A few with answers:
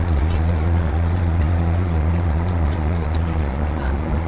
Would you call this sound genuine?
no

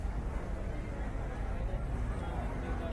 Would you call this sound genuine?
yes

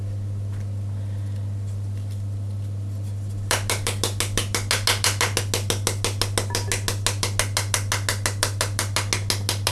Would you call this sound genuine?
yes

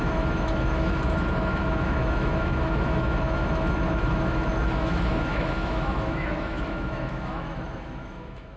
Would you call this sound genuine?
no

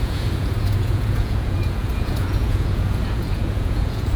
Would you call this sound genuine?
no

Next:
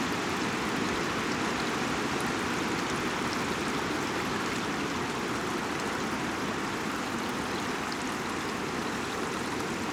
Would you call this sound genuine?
yes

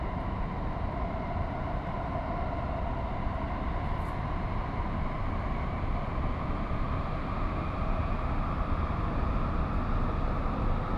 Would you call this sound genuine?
yes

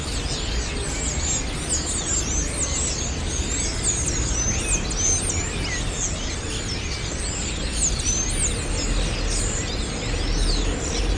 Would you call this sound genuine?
yes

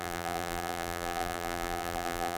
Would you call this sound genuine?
no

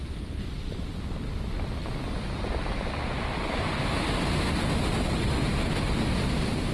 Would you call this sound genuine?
yes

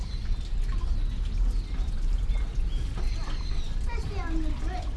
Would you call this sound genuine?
yes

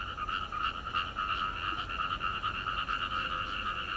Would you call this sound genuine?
yes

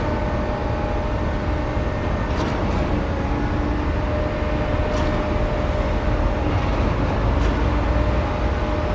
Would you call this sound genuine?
yes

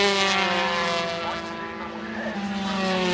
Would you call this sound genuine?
yes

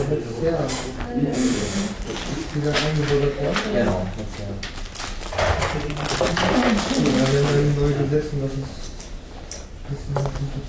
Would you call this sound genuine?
yes